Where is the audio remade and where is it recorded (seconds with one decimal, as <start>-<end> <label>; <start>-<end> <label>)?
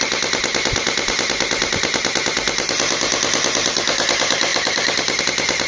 0.0-5.7 recorded